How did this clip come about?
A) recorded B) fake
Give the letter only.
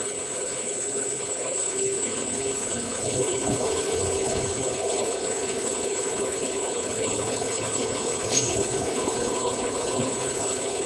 B